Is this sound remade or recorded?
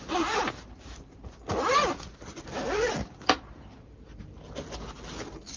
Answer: recorded